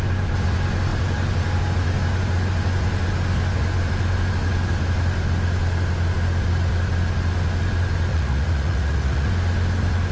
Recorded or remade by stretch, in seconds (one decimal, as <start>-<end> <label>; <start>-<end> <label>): 0.0-8.1 recorded; 8.1-9.3 remade; 9.3-10.1 recorded